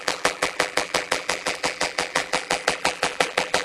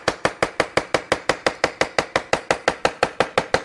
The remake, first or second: first